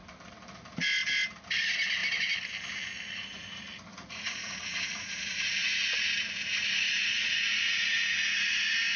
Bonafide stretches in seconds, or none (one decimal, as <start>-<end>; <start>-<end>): 0.0-3.9; 8.5-9.0